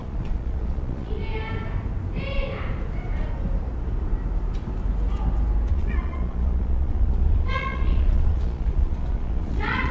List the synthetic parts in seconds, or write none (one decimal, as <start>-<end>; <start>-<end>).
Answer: 0.0-1.2; 5.7-9.9